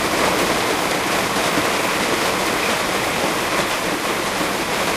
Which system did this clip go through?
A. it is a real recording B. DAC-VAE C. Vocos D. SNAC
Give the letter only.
A